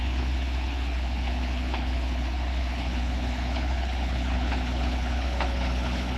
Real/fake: fake